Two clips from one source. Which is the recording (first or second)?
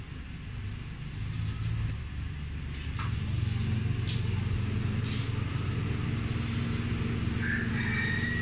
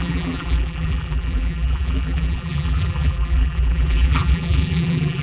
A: first